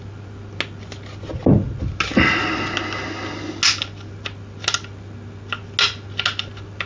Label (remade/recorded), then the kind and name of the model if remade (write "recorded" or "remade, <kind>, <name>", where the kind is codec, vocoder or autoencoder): recorded